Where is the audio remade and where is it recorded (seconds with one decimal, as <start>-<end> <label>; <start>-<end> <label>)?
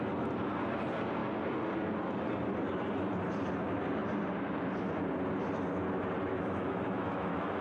0.0-6.3 recorded; 6.3-7.6 remade